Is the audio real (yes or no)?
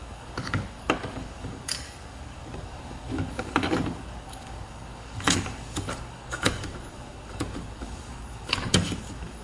no